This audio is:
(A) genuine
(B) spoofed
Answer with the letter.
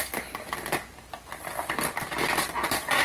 A